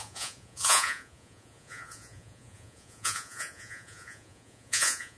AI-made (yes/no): yes